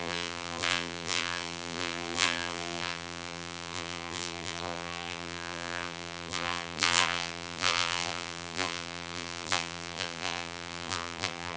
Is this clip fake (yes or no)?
yes